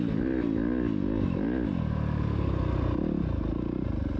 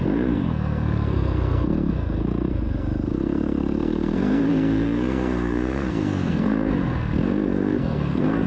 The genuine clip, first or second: first